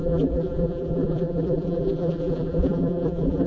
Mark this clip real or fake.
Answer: fake